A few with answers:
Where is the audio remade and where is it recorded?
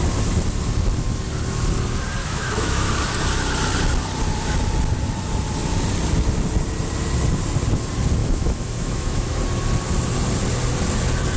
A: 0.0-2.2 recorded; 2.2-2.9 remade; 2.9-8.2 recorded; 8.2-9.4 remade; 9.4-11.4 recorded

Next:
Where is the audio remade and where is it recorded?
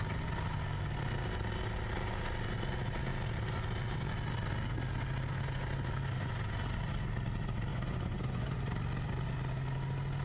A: 0.0-7.7 recorded; 7.7-8.6 remade; 8.6-10.2 recorded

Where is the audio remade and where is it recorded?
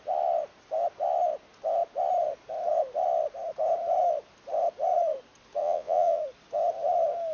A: 0.0-5.6 recorded; 5.6-6.2 remade; 6.2-7.3 recorded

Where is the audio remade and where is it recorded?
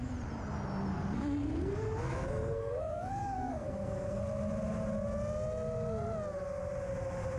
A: 0.0-0.9 recorded; 0.9-4.2 remade; 4.2-7.4 recorded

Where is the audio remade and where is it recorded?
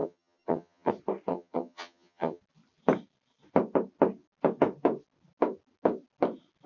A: 0.0-0.9 remade; 0.9-1.3 recorded; 1.3-2.4 remade; 2.4-6.7 recorded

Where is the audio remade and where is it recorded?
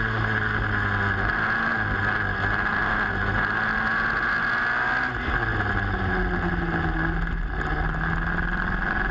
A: 0.0-9.1 recorded